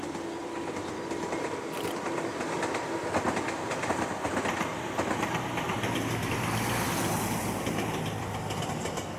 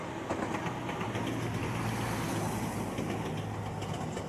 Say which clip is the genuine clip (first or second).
second